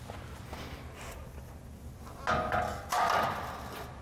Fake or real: real